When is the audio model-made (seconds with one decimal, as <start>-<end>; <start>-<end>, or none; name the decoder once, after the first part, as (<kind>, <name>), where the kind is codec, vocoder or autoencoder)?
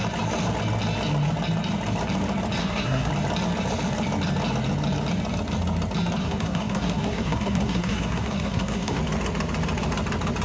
2.6-3.1 (codec, SNAC); 6.2-9.0